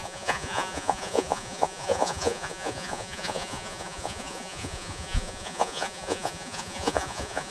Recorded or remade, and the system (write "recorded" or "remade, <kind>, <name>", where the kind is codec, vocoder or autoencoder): remade, vocoder, Vocos